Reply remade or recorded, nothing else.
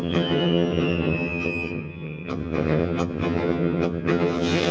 remade